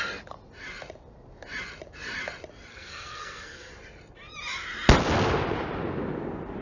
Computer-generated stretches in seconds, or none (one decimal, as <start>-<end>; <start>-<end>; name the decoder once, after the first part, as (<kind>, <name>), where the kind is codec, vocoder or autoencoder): 2.7-3.7 (codec, SNAC)